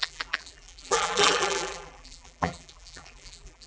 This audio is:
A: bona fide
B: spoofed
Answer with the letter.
B